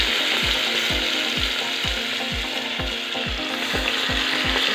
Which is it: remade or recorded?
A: recorded